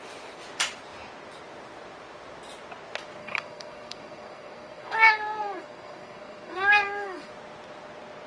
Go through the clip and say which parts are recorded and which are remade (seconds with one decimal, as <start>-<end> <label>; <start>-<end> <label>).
0.0-3.2 recorded; 3.2-7.3 remade; 7.3-8.3 recorded